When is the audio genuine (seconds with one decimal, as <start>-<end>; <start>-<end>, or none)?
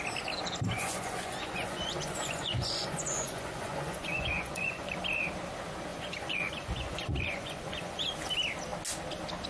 0.0-0.7; 4.9-5.9; 8.1-9.5